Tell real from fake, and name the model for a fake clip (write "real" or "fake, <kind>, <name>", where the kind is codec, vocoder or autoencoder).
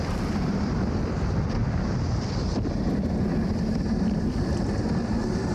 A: fake, vocoder, BigVGAN v2